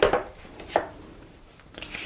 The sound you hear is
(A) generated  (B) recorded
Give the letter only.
A